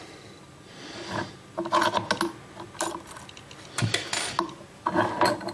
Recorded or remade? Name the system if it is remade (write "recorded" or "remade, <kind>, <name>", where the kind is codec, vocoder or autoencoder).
recorded